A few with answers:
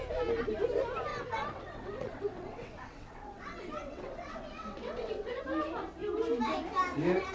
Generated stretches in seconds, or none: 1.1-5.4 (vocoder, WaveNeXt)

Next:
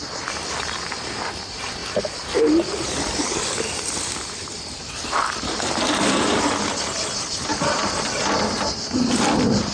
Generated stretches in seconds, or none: none

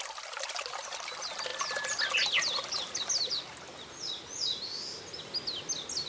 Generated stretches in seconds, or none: none

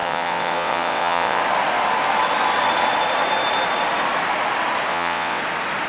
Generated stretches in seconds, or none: 0.0-1.4 (vocoder, WaveNeXt); 4.9-5.4

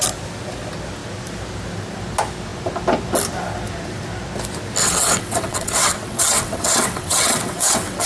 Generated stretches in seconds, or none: 4.8-8.1 (vocoder, WaveNeXt)